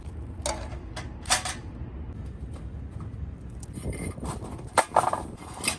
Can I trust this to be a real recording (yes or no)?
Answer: yes